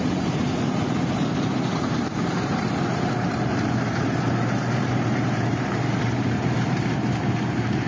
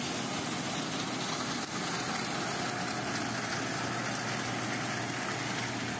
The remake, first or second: first